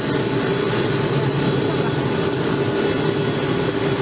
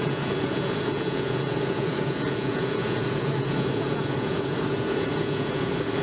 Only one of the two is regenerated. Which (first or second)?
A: second